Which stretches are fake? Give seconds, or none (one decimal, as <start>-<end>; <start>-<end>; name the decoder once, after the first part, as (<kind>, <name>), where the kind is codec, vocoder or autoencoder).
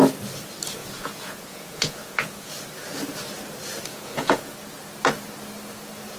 0.8-2.5 (vocoder, Vocos); 3.9-4.5